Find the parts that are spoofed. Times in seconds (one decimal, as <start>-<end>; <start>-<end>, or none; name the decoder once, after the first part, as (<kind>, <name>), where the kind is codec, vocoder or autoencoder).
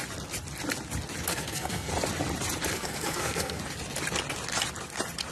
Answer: 1.3-1.9 (codec, SNAC); 2.7-3.6